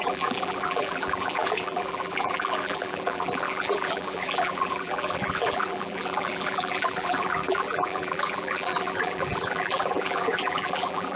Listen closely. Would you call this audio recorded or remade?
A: remade